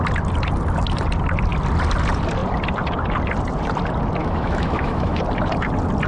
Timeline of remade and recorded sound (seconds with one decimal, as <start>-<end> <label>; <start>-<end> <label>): 0.0-4.2 recorded; 4.2-5.2 remade; 5.2-6.1 recorded